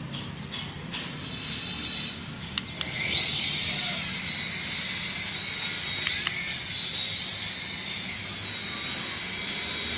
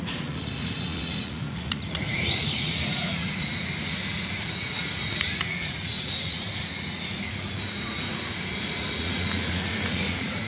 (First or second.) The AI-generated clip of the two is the second